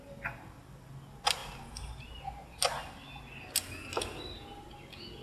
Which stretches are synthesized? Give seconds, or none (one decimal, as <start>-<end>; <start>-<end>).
none

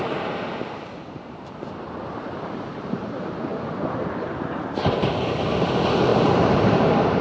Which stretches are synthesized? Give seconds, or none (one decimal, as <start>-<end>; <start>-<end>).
0.0-7.2

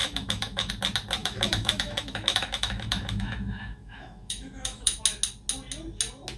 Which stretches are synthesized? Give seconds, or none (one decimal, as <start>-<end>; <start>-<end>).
0.0-0.7; 1.2-5.0

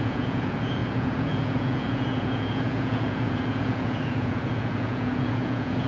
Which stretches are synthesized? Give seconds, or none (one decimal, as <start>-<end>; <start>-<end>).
0.0-5.9

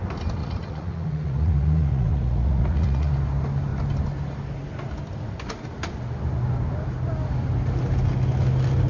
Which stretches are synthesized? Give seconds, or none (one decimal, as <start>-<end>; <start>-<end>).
0.4-3.1